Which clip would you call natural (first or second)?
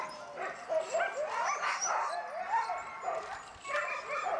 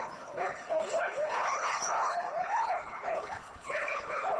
first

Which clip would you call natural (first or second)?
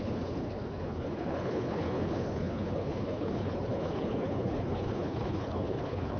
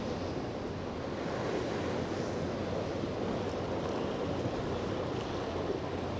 second